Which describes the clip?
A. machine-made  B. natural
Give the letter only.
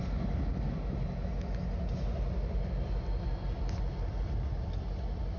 B